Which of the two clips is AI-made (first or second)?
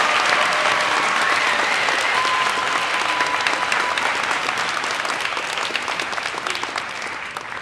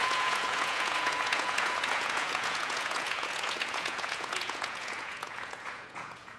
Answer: second